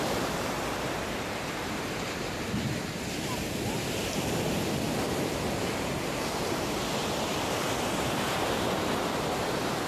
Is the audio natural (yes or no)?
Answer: yes